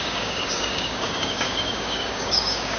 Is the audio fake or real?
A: fake